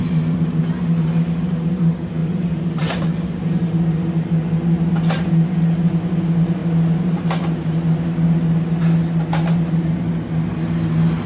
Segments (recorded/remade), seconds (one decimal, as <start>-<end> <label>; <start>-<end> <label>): 0.0-0.6 remade; 0.6-2.2 recorded; 2.2-3.7 remade; 3.7-11.3 recorded